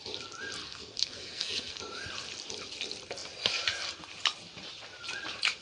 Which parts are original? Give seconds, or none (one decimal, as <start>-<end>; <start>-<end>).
0.0-0.6; 1.8-5.6